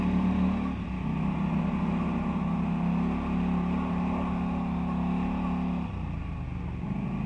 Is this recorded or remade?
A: recorded